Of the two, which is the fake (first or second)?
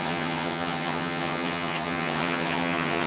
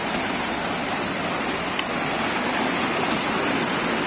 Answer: first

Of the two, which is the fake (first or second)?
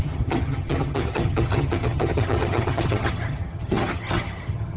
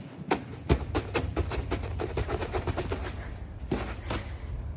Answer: first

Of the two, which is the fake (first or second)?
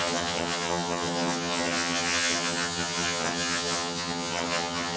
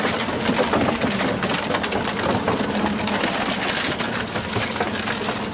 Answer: first